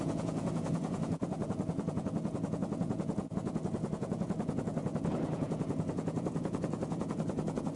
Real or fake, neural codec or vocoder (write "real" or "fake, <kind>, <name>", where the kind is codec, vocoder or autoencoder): fake, vocoder, Vocos